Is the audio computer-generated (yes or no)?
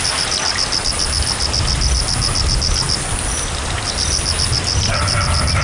no